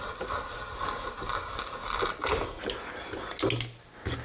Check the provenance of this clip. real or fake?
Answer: real